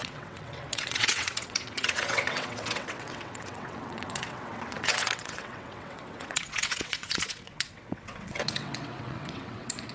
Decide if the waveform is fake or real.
fake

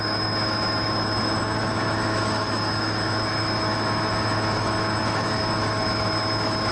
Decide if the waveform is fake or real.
fake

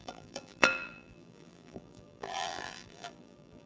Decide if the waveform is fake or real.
fake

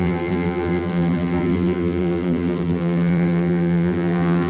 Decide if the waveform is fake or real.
fake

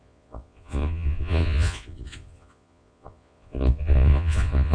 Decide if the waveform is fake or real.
fake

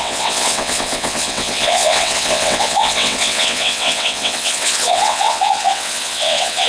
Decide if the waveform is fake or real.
fake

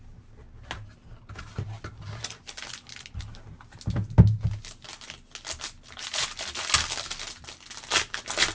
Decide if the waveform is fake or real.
real